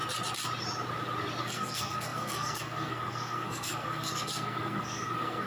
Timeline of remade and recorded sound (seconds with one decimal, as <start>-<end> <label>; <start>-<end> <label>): 0.0-1.4 recorded; 1.4-5.5 remade